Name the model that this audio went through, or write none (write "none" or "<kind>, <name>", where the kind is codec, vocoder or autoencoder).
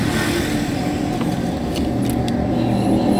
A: none